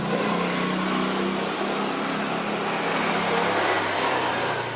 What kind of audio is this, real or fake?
real